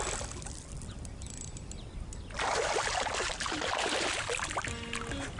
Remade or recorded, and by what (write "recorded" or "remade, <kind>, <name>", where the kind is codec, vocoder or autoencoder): recorded